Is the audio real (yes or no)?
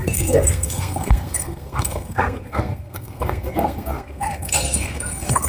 no